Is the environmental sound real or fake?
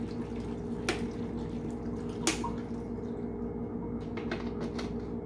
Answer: real